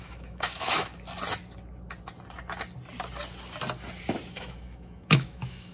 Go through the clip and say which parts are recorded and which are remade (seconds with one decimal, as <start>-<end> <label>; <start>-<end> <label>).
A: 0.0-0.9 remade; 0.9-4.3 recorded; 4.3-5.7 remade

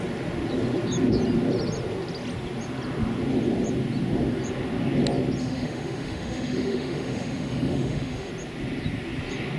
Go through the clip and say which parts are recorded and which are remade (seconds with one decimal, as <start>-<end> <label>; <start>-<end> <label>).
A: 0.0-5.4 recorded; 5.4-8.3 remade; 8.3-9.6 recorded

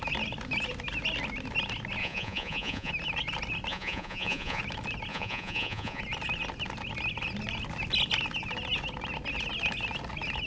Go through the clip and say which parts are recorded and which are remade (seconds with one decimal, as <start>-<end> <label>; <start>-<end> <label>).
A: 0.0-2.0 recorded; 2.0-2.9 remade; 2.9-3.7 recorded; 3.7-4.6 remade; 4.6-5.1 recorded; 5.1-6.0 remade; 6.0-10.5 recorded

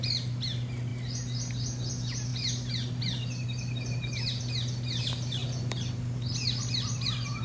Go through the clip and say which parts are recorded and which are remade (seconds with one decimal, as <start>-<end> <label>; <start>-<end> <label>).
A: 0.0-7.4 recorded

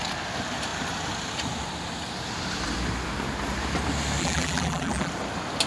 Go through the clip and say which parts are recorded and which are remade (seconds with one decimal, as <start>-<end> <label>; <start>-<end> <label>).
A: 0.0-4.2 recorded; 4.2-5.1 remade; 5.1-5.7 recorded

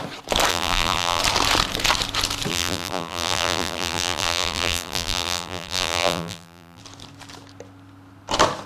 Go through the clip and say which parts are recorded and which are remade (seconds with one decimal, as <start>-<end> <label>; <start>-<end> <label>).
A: 0.0-0.5 recorded; 0.5-1.2 remade; 1.2-2.5 recorded; 2.5-6.8 remade; 6.8-8.7 recorded

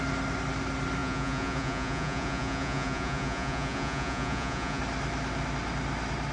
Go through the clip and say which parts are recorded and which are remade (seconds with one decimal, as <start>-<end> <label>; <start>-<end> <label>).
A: 0.0-1.0 recorded; 1.0-4.8 remade; 4.8-6.3 recorded

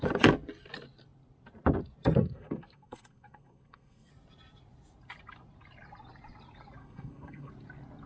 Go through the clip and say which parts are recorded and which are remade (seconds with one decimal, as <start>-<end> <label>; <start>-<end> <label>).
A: 0.0-2.2 recorded; 2.2-4.1 remade; 4.1-6.8 recorded; 6.8-7.5 remade; 7.5-8.1 recorded